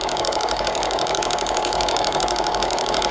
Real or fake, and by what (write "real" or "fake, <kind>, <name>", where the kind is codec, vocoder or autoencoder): fake, codec, DAC